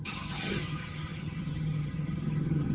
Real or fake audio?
fake